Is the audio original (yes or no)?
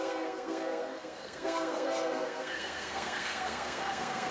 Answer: no